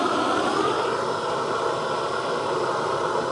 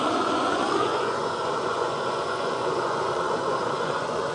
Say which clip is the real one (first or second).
first